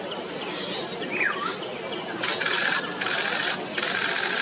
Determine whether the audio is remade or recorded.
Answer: recorded